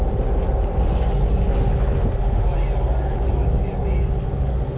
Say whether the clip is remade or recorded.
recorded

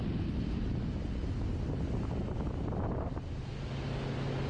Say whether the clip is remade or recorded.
recorded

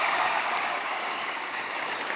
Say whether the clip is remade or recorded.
remade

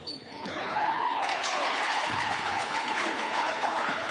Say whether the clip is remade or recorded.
remade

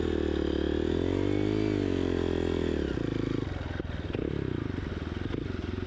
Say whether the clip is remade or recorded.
recorded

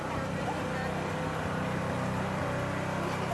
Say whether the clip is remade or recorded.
recorded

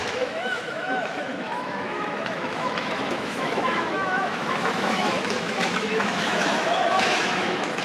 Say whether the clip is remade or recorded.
remade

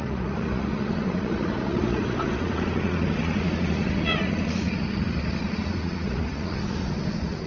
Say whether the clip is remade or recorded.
remade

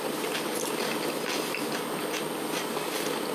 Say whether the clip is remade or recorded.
recorded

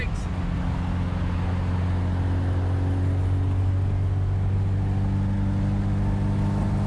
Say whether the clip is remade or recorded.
recorded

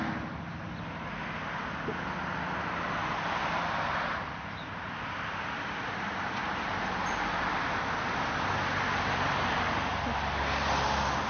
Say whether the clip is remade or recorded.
recorded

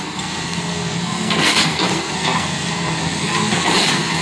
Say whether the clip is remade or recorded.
remade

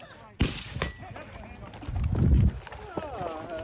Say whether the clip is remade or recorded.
recorded